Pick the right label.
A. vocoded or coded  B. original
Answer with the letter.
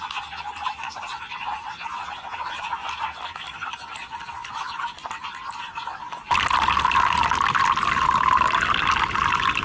B